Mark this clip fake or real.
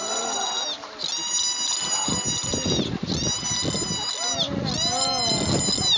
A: real